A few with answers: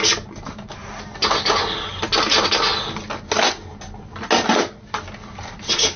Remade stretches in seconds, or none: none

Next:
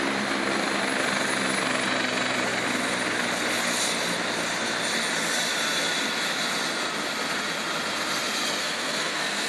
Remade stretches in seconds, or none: 8.6-9.5

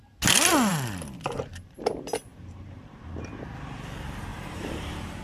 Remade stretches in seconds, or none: 0.7-3.4; 4.3-5.2